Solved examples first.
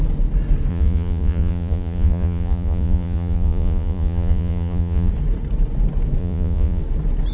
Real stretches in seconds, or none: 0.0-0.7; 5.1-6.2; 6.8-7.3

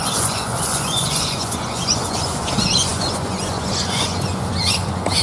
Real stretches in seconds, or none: none

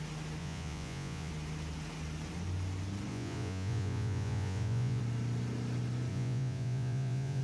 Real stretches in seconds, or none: 0.0-0.4; 1.3-3.1; 5.0-6.1

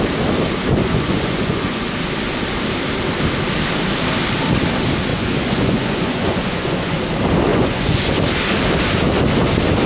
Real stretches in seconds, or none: 0.0-0.8; 1.8-5.1; 7.0-7.5; 8.1-9.9

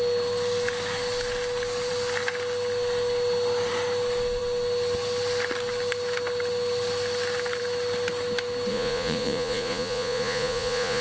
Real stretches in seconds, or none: 0.0-8.7

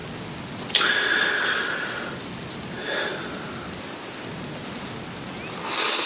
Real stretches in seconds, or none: 0.0-6.1

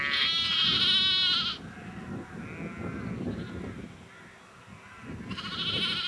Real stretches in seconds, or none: 0.0-6.1